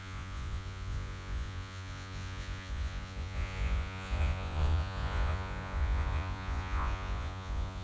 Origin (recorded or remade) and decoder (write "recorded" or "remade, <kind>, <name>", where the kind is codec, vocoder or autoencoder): remade, vocoder, Vocos